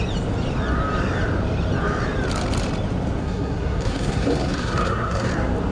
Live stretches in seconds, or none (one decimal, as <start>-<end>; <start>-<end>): 0.0-3.2; 5.3-5.7